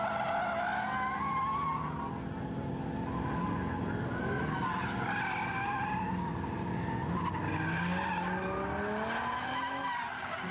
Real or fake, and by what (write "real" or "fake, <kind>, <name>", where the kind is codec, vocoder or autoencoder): real